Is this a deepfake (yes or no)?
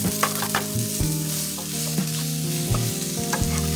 no